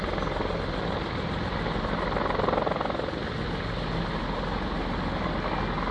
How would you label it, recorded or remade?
recorded